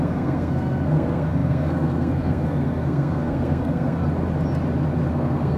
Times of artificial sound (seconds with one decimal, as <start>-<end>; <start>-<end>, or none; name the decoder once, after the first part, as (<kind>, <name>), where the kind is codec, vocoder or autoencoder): 0.0-4.0 (codec, SNAC); 5.1-5.6